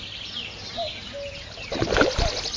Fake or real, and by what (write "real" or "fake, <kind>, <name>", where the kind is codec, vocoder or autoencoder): real